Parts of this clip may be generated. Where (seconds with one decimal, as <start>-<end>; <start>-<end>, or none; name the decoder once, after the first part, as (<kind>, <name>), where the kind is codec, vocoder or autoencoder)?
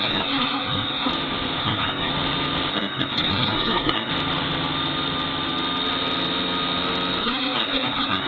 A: 0.0-1.1 (codec, SNAC); 1.6-2.1; 2.7-4.1; 7.2-8.3